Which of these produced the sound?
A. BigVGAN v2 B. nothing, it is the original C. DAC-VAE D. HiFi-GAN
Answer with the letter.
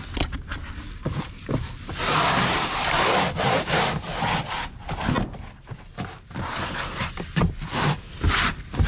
B